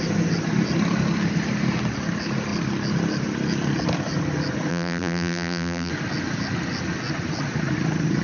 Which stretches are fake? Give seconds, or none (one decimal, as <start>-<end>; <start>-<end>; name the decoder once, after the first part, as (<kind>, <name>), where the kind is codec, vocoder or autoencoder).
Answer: 4.7-5.9 (vocoder, BigVGAN v2)